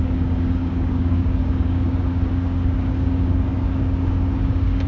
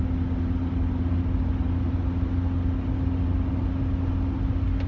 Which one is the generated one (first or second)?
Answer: first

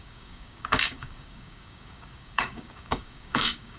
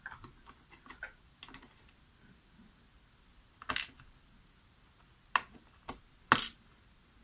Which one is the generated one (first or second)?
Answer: first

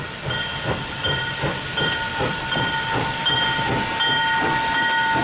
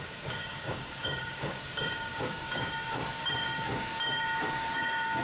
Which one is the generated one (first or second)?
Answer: second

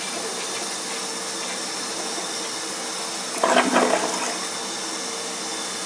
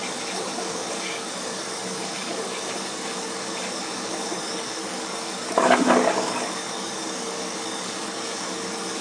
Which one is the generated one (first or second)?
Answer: second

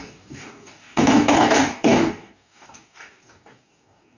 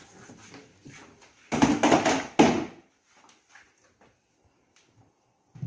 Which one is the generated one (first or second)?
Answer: first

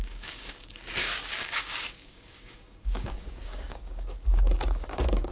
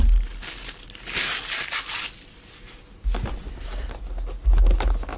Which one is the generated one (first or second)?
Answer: first